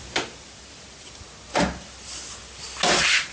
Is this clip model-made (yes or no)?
no